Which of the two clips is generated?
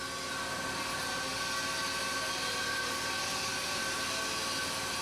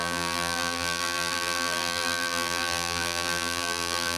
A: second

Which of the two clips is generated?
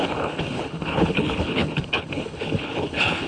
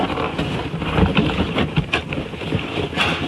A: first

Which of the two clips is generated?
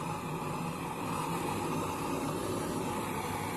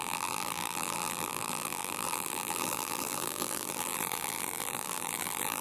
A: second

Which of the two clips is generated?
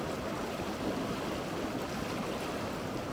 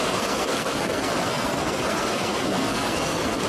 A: second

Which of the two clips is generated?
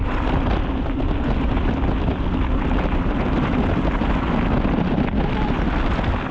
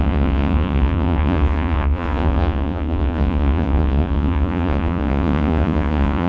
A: second